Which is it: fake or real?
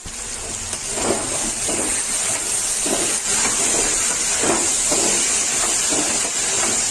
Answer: real